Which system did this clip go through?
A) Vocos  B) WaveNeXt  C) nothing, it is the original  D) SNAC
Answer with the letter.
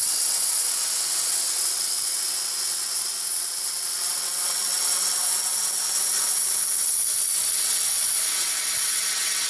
B